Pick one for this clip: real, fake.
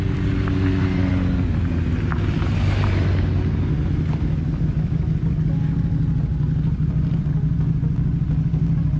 real